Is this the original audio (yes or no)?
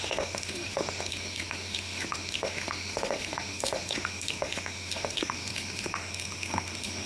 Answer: no